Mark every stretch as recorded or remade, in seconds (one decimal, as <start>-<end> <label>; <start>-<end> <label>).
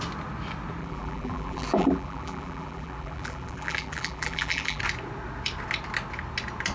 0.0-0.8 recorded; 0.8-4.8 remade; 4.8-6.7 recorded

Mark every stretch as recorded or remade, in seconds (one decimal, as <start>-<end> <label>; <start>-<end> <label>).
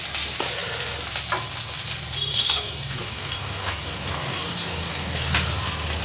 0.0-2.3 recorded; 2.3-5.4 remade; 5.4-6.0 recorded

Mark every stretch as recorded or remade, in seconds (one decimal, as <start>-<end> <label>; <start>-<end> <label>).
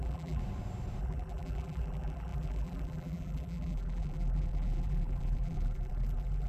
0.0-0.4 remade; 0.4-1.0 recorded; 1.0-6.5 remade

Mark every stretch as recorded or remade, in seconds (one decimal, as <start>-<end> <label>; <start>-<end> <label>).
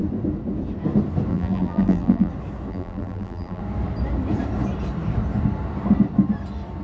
0.0-1.3 recorded; 1.3-2.3 remade; 2.3-2.7 recorded; 2.7-3.6 remade; 3.6-6.8 recorded